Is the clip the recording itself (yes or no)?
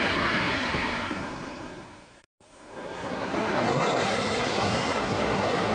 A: no